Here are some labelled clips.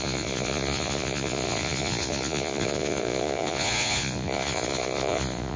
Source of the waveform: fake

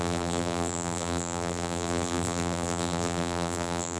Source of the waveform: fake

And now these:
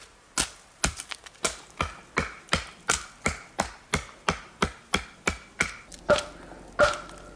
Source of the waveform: real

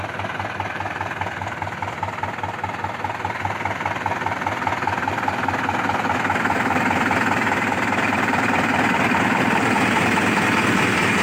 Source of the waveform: real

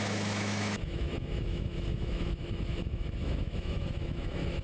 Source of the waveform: fake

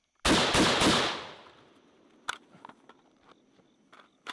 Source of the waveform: real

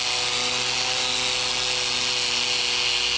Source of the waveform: real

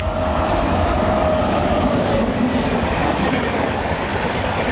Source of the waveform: fake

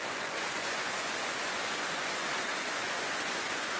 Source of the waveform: fake